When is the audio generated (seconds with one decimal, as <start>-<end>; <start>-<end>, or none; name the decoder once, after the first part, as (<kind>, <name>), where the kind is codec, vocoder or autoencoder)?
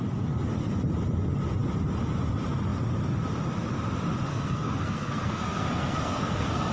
4.3-6.7 (codec, SNAC)